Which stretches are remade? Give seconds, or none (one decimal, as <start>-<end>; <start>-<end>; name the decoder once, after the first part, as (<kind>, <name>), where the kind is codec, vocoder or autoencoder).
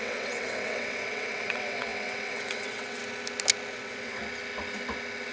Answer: 0.0-3.0 (vocoder, WaveNeXt); 3.7-4.2